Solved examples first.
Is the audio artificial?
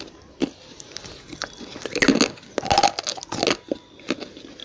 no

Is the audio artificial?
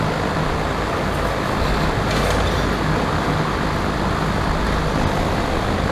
no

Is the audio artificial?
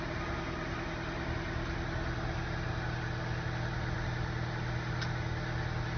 no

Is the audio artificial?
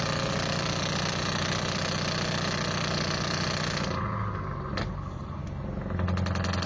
no